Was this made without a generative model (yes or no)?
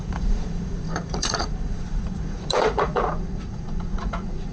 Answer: no